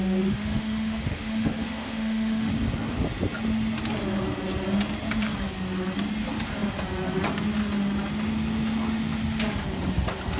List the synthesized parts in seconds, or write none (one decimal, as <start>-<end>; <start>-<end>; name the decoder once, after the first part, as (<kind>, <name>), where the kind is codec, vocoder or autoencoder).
0.0-2.5 (autoencoder, DAC-VAE)

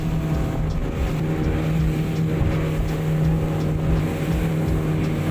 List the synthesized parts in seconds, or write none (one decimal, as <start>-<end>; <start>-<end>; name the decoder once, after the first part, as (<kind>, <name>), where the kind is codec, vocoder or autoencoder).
none

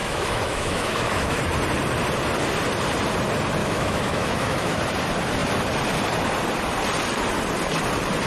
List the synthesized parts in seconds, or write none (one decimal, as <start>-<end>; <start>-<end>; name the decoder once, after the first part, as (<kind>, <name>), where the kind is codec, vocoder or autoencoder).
0.0-1.4 (autoencoder, DAC-VAE); 3.6-4.8